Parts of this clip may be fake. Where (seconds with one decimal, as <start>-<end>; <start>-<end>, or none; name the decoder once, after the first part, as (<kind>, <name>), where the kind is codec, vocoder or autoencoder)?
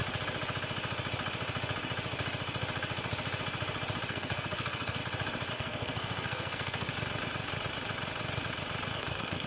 4.1-5.0 (codec, SNAC); 5.5-6.9; 8.9-9.5